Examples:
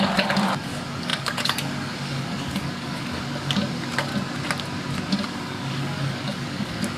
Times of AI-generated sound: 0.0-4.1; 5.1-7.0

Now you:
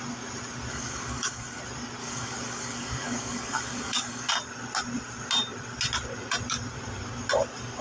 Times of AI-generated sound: 0.7-1.6; 2.0-4.3

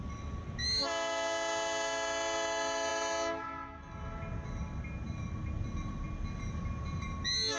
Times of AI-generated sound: none

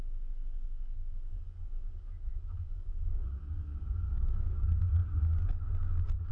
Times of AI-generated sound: 0.0-6.3

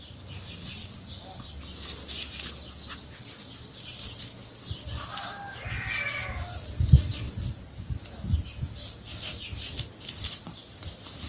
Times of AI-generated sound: none

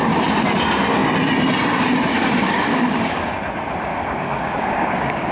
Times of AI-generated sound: 2.1-3.3; 3.9-5.3

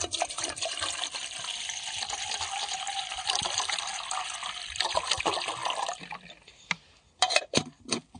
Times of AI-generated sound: none

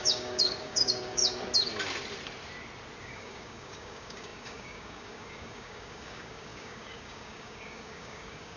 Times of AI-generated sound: 0.0-1.2; 3.0-8.6